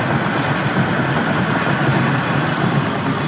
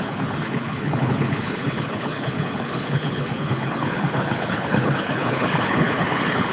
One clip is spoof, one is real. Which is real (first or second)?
first